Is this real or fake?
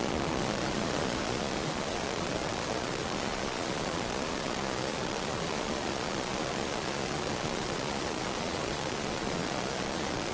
fake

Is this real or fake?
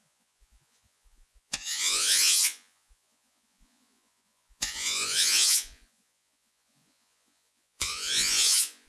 fake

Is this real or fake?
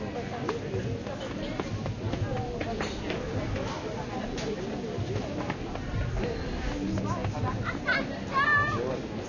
real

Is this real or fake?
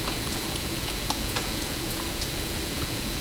fake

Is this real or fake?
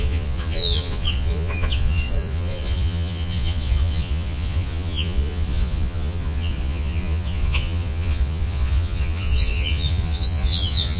fake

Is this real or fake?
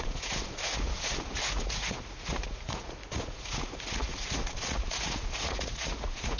fake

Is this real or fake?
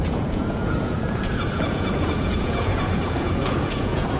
fake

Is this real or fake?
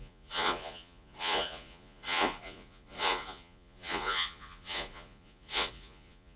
fake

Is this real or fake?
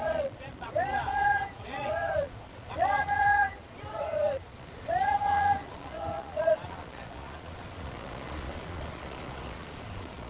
fake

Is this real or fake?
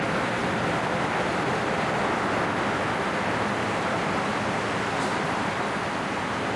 real